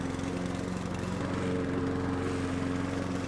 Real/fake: real